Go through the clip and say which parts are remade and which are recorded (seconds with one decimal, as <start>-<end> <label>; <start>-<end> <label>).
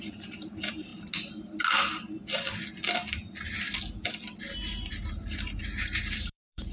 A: 0.0-0.9 remade; 0.9-4.9 recorded; 4.9-6.7 remade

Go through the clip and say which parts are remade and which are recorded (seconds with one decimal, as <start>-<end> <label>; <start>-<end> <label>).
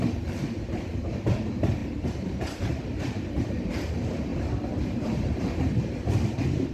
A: 0.0-4.3 remade; 4.3-4.8 recorded; 4.8-6.7 remade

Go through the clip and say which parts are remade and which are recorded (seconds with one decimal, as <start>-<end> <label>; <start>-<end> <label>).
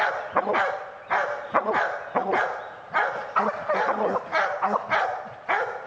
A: 0.0-5.9 recorded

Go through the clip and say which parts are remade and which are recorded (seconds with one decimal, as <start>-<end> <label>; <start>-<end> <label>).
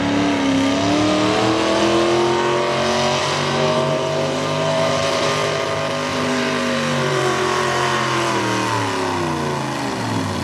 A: 0.0-3.2 recorded; 3.2-5.3 remade; 5.3-6.1 recorded; 6.1-8.4 remade; 8.4-10.4 recorded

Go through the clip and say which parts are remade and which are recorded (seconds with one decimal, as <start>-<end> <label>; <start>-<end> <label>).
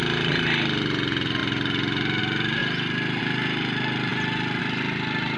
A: 0.0-5.4 recorded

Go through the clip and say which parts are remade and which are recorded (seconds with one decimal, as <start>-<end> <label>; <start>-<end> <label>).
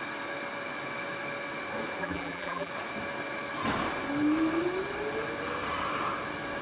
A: 0.0-2.0 recorded; 2.0-2.7 remade; 2.7-6.6 recorded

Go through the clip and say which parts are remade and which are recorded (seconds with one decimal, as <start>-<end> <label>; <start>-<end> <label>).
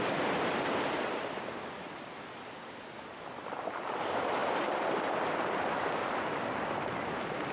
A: 0.0-7.5 remade